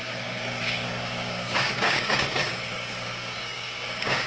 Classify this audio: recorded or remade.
remade